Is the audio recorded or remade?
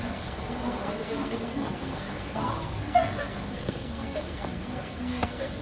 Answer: remade